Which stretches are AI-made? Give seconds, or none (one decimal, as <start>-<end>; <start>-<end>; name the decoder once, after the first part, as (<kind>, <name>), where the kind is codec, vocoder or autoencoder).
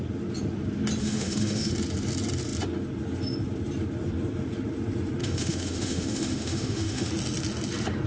1.0-1.7 (autoencoder, DAC-VAE); 5.2-7.1